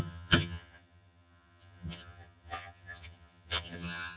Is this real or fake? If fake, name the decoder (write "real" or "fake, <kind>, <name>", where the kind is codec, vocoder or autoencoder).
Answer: fake, vocoder, HiFi-GAN